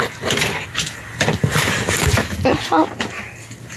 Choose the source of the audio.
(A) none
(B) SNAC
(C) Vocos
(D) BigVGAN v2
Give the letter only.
A